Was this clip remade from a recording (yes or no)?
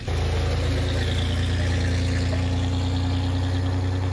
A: no